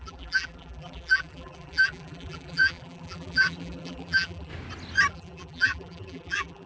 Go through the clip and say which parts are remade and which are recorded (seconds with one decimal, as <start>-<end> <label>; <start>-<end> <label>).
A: 0.0-4.5 remade; 4.5-5.1 recorded; 5.1-6.7 remade